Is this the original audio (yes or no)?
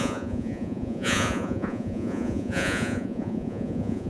no